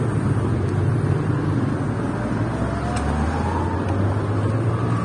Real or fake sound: real